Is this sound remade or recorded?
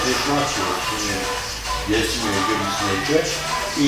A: recorded